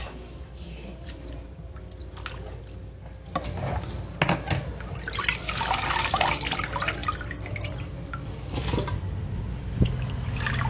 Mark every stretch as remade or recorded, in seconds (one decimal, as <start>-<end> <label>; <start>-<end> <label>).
0.0-10.7 recorded